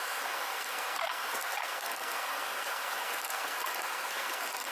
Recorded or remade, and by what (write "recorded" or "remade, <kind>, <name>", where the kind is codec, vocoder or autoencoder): remade, codec, SNAC